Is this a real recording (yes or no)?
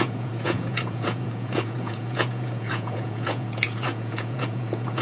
no